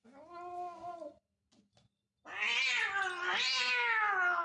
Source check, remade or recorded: recorded